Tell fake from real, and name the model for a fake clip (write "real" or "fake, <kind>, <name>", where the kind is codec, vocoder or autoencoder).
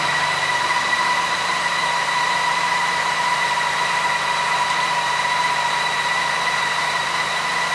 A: fake, vocoder, BigVGAN v2